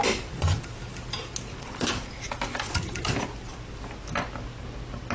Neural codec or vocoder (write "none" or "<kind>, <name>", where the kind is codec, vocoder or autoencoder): none